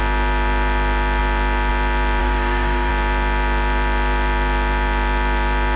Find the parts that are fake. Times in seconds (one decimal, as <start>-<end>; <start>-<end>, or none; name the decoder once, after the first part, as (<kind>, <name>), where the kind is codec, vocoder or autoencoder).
2.2-2.9 (codec, DAC)